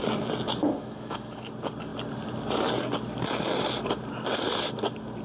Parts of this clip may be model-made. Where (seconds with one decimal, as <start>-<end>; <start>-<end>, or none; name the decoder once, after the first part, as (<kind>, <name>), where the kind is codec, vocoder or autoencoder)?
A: 0.6-1.5 (autoencoder, DAC-VAE)

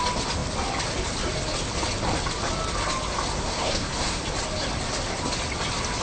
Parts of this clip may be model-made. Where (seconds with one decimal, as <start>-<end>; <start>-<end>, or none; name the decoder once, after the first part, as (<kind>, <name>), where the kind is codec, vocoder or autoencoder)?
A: 3.4-4.2 (codec, SNAC)

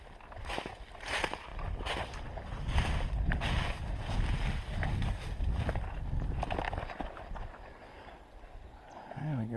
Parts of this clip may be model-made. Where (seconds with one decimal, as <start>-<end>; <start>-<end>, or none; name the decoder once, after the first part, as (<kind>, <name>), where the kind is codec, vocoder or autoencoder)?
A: none

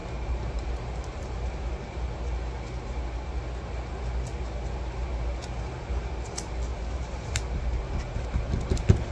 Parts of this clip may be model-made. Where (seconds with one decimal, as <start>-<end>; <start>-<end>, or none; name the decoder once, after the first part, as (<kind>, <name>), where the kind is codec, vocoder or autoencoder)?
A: 0.0-1.7 (vocoder, BigVGAN v2); 6.7-7.3

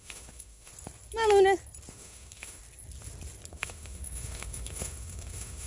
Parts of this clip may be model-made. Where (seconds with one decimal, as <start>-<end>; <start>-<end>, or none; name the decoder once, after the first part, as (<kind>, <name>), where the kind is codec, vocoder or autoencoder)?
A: 0.0-0.7 (autoencoder, DAC-VAE); 1.9-2.6; 3.5-5.7

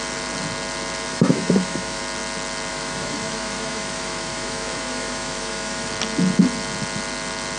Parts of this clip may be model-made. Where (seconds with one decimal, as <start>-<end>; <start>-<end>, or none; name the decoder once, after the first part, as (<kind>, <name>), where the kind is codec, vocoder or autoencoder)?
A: 1.1-2.0 (autoencoder, DAC-VAE); 2.7-5.9

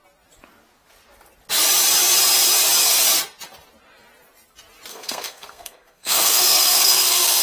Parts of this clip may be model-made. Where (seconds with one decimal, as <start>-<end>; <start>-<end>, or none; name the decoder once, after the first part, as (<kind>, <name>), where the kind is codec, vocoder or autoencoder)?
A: 4.9-7.4 (codec, SNAC)

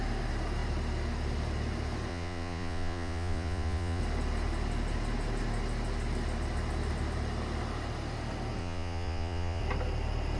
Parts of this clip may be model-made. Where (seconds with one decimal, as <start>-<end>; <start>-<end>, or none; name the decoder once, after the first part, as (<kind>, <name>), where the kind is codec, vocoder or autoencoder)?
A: 2.1-4.0 (vocoder, Vocos); 8.6-9.6